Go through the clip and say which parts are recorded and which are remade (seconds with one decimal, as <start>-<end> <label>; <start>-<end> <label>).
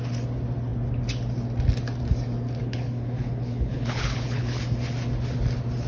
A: 0.0-2.6 recorded; 2.6-4.6 remade; 4.6-5.9 recorded